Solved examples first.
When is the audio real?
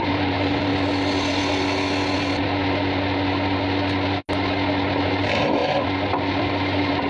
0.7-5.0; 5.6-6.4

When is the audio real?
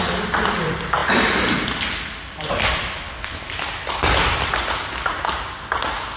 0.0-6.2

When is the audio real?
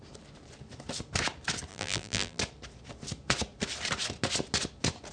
0.0-1.7; 2.4-5.1